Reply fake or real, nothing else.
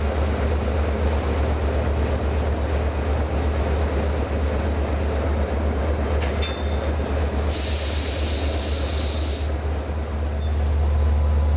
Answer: real